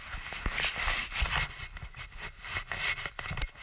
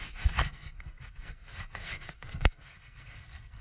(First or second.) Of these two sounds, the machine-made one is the second